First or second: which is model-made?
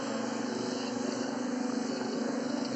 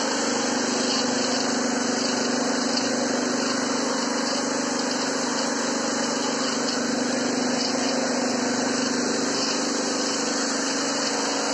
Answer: first